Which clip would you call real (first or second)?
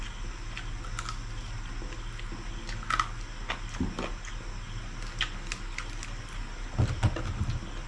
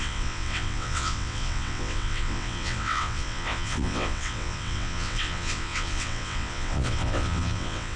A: first